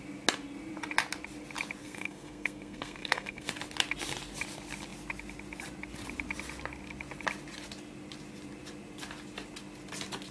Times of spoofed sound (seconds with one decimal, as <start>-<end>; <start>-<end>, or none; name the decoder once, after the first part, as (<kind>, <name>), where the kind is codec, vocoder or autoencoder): 1.8-3.5 (codec, SNAC)